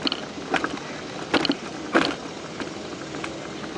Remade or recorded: recorded